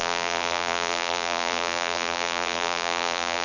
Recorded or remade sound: remade